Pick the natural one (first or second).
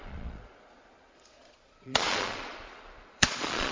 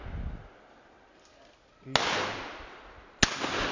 second